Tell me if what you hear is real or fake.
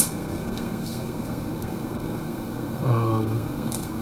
fake